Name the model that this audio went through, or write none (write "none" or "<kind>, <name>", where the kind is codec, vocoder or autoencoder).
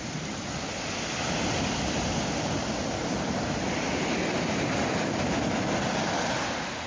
none